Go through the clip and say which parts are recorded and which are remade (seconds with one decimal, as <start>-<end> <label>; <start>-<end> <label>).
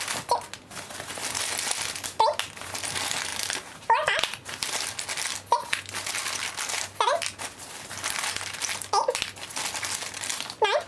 0.0-3.3 recorded; 3.3-4.7 remade; 4.7-6.2 recorded; 6.2-7.0 remade; 7.0-10.9 recorded